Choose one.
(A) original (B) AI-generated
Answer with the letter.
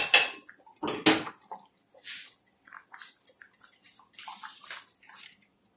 A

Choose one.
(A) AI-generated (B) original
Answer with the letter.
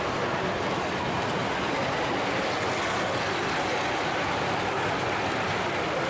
B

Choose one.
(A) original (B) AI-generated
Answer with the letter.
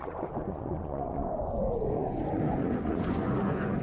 B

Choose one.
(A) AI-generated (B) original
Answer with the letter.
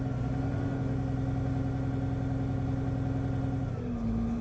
B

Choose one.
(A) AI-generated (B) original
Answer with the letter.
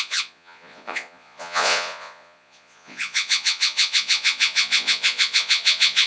A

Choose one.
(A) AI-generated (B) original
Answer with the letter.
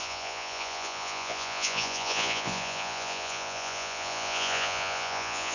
A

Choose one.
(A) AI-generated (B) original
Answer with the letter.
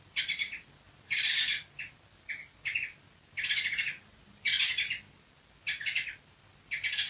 B